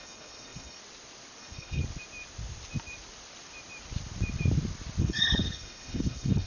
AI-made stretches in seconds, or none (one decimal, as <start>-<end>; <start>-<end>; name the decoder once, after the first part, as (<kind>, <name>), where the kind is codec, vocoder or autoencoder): 0.0-0.8 (codec, HILCodec); 1.4-1.8; 5.0-6.5